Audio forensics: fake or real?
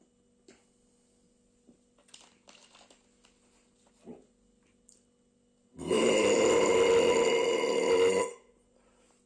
real